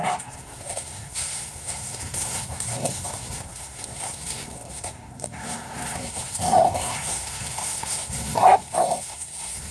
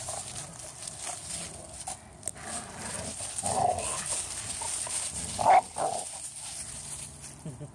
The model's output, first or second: first